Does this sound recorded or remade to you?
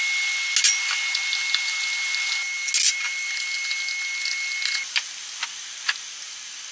recorded